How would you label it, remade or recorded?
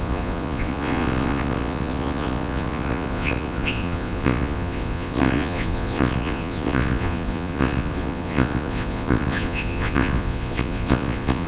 remade